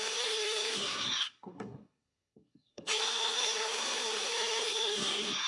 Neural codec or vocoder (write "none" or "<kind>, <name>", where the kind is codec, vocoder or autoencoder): codec, SNAC